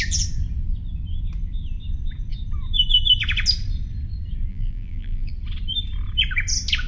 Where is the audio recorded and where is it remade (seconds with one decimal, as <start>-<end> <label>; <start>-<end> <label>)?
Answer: 0.0-4.5 recorded; 4.5-5.3 remade; 5.3-6.9 recorded